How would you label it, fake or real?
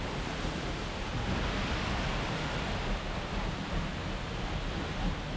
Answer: real